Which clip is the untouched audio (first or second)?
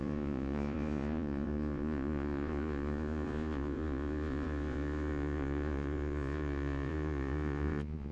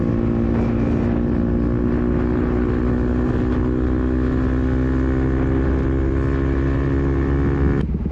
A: second